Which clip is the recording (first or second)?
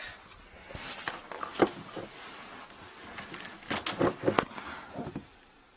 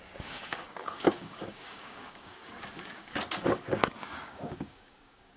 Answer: first